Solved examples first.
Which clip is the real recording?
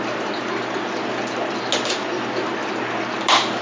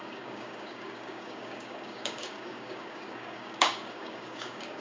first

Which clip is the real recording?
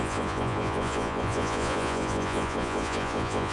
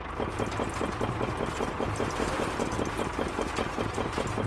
second